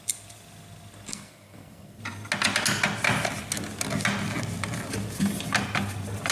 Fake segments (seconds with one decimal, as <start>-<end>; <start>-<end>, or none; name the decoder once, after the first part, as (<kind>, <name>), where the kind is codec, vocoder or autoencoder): 1.1-2.0 (codec, SNAC)